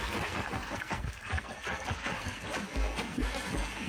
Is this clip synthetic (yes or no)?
yes